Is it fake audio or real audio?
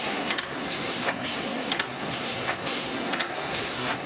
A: fake